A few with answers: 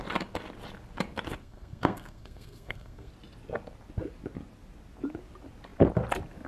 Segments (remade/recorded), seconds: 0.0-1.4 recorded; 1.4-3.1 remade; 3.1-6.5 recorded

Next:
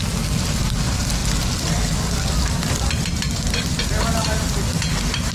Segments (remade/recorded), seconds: 0.0-5.3 recorded

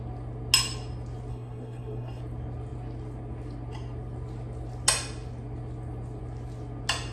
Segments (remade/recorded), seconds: 0.0-1.3 recorded; 1.3-2.2 remade; 2.2-7.1 recorded

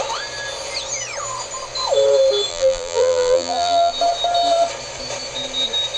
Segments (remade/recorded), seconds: 0.0-2.5 recorded; 2.5-3.9 remade; 3.9-6.0 recorded